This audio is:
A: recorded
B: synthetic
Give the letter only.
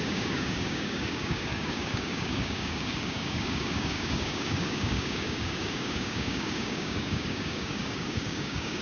B